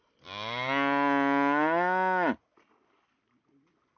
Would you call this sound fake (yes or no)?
no